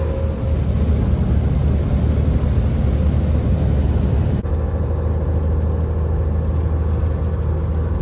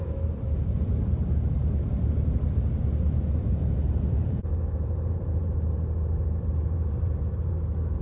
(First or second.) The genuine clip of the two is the first